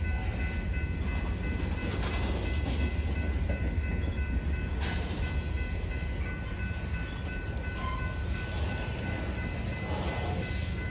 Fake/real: real